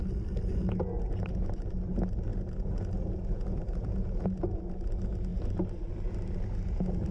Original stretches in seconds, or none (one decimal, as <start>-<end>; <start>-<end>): 0.0-2.3; 4.6-7.1

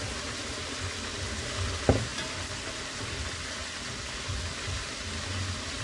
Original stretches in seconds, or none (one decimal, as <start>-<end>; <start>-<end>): 0.0-5.8

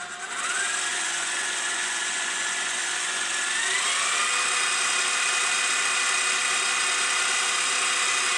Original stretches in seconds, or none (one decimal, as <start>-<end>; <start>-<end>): 0.0-0.9; 3.2-8.4